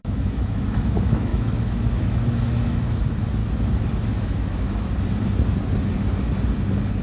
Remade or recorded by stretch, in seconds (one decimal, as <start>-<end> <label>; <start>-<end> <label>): 0.0-3.4 remade; 3.4-4.1 recorded; 4.1-4.9 remade; 4.9-7.0 recorded